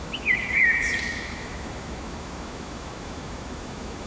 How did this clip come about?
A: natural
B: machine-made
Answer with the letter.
B